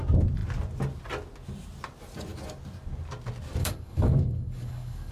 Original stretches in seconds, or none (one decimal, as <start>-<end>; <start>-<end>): 0.0-3.6